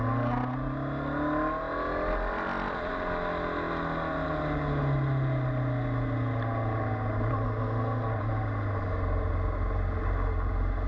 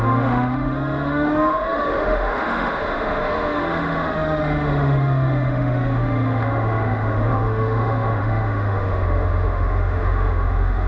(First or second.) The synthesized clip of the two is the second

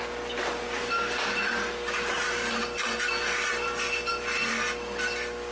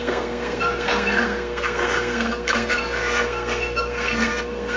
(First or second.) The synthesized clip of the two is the second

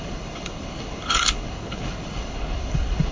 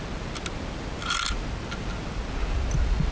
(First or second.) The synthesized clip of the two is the first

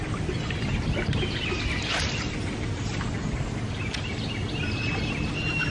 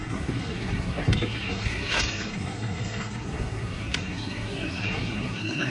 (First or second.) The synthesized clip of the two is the second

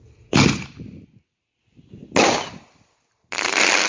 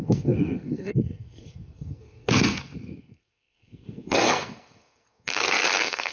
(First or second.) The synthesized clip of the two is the second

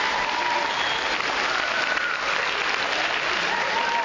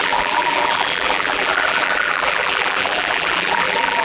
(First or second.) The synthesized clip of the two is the second